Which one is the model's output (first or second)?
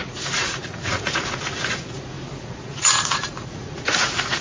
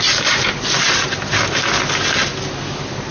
first